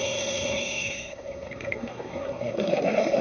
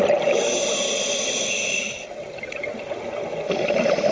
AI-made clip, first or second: first